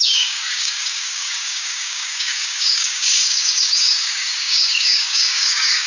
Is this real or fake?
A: fake